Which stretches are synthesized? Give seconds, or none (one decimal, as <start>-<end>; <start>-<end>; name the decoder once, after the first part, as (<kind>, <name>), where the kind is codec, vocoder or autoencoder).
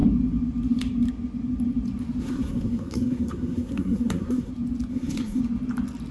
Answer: 2.2-4.5 (codec, SNAC); 4.9-5.4